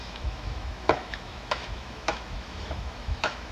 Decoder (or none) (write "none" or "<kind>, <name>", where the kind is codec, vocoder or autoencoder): autoencoder, DAC-VAE